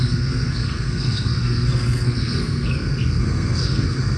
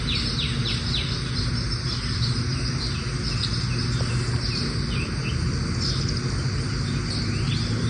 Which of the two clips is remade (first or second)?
first